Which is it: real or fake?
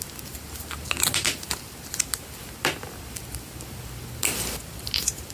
real